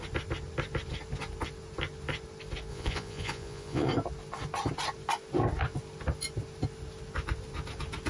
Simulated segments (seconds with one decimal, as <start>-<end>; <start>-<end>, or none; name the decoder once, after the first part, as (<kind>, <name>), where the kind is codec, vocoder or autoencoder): 2.7-3.9 (vocoder, Vocos)